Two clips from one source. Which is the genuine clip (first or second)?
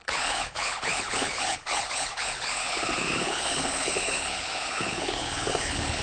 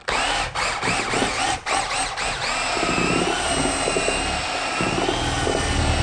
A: second